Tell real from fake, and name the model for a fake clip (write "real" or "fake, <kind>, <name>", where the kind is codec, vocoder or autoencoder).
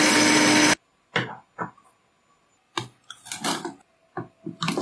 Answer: real